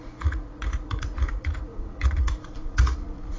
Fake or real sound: fake